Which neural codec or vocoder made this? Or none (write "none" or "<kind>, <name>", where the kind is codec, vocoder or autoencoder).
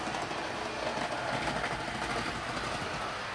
none